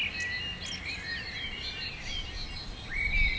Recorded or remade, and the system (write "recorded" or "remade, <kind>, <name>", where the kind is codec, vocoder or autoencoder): recorded